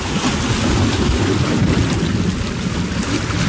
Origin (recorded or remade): recorded